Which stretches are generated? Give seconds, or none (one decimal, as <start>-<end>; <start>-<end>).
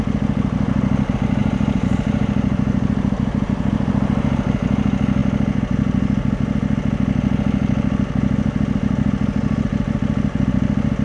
1.4-3.9